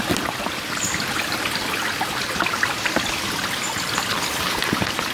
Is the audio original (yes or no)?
yes